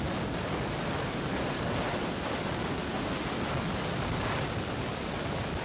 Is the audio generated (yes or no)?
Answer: no